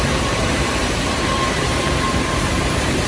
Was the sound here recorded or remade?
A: remade